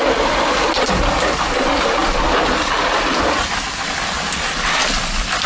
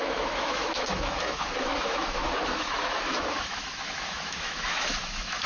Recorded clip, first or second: first